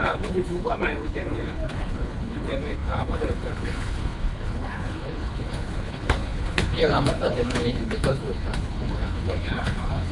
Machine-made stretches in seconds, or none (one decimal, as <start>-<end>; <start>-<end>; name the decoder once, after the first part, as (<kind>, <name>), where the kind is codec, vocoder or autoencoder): 0.0-10.1 (codec, HILCodec)